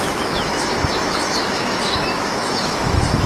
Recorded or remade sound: remade